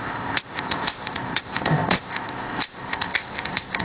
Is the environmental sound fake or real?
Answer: fake